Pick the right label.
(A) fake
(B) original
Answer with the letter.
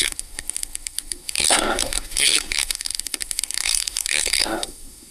A